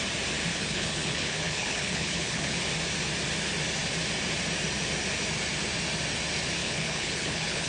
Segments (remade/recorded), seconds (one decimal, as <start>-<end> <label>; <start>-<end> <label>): 0.0-0.5 recorded; 0.5-2.6 remade; 2.6-6.6 recorded; 6.6-7.7 remade